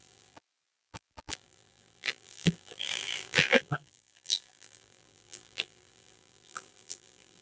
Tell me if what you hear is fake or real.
fake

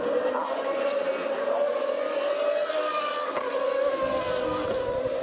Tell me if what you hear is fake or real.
real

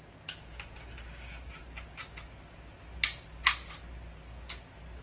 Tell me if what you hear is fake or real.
real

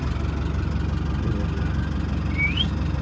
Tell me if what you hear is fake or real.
real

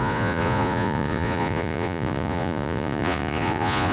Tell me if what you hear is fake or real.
fake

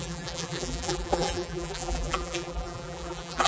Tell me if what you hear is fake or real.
fake